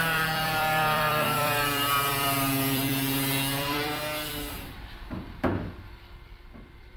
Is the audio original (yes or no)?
no